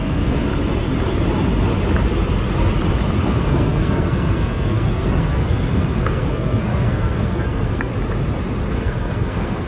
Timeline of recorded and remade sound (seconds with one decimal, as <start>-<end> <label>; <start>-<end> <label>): 0.0-0.5 remade; 0.5-3.2 recorded; 3.2-7.9 remade; 7.9-8.7 recorded; 8.7-9.7 remade